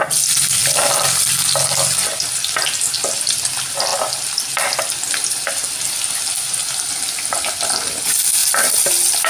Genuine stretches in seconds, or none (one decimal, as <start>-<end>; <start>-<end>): 0.0-0.6; 1.3-8.4